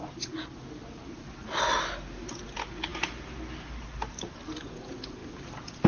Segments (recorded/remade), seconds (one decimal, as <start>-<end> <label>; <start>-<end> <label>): 0.0-5.9 recorded